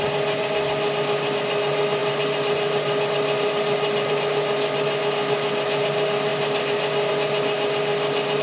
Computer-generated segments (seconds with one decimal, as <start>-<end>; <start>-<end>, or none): none